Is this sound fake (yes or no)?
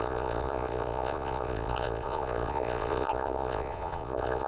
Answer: yes